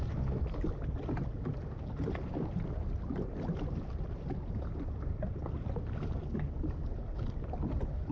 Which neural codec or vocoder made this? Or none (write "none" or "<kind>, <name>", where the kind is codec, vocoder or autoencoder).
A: none